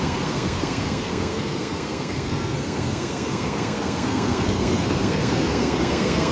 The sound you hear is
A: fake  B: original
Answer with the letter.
A